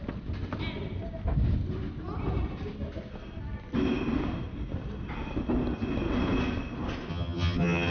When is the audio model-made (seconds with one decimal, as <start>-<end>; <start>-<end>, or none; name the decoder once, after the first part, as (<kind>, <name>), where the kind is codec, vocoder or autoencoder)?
7.1-7.9 (vocoder, HiFi-GAN)